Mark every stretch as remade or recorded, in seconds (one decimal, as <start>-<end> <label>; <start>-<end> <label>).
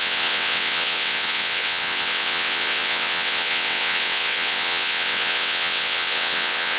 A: 0.0-6.8 remade